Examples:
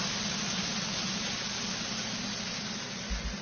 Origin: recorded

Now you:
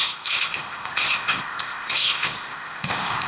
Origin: remade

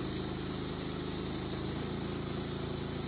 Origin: recorded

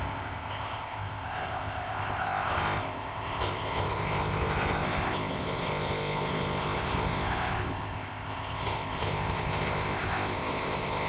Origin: remade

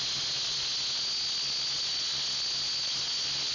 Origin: recorded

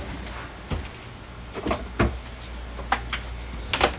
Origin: recorded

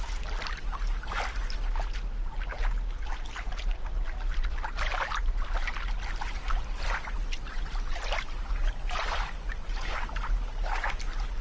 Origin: recorded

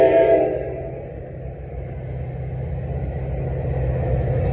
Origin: recorded